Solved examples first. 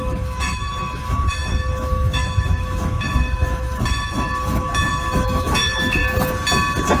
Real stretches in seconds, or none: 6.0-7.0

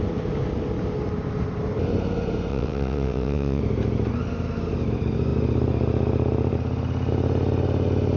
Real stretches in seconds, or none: 0.0-2.5; 3.6-8.2

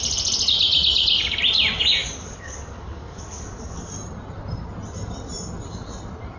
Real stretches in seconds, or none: 0.0-2.0; 3.9-6.4

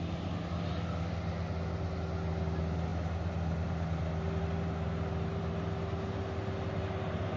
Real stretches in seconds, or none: 0.0-7.4

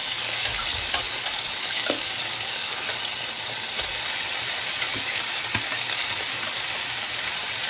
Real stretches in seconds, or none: 3.0-4.9; 6.6-7.7